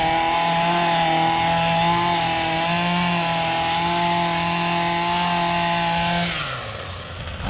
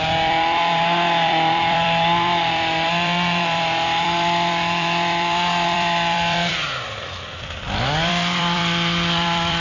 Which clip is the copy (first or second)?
second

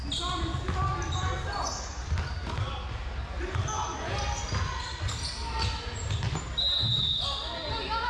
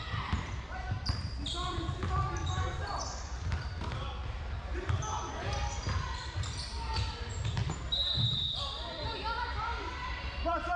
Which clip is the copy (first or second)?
second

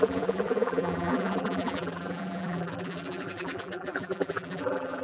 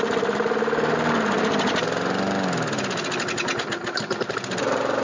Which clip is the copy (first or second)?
first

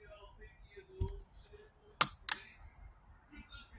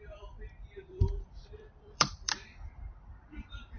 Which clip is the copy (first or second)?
second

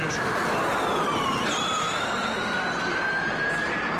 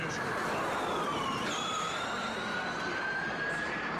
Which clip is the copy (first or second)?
second